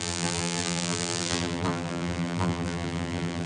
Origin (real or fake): fake